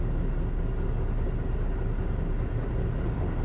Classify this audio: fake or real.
real